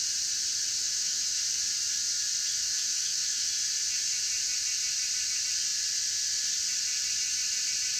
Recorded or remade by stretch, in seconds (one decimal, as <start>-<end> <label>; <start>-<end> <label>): 0.0-0.8 recorded; 0.8-1.4 remade; 1.4-2.6 recorded; 2.6-3.5 remade; 3.5-8.0 recorded